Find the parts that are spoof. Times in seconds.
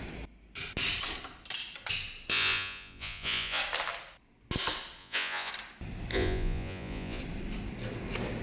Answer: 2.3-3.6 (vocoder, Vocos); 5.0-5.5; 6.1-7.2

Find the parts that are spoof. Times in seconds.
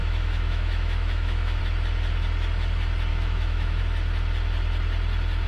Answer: 0.0-1.6 (autoencoder, DAC-VAE); 3.1-3.8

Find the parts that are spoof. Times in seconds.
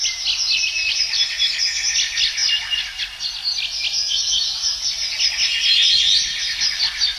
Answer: 0.6-1.3 (vocoder, BigVGAN v2)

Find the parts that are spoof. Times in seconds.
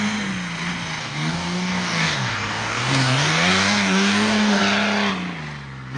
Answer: 1.0-4.6 (codec, DAC)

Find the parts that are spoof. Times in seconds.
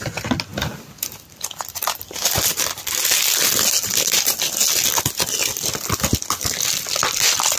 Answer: none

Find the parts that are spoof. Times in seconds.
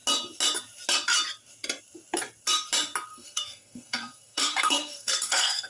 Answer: 3.1-5.7 (codec, SNAC)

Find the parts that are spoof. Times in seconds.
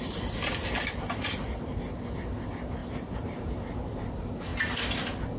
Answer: 2.8-3.8 (vocoder, BigVGAN v2)